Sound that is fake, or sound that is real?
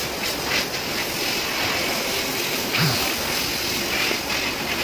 real